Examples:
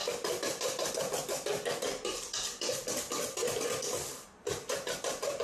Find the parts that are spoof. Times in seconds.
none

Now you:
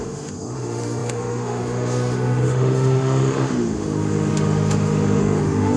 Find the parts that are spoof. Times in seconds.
0.0-5.8 (autoencoder, DAC-VAE)